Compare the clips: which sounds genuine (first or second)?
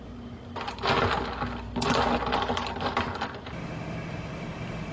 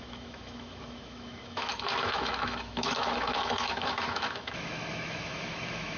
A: first